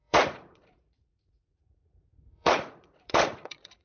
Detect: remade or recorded remade